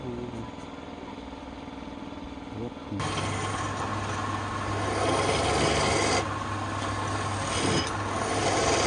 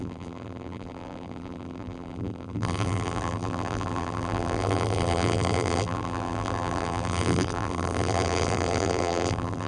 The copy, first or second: second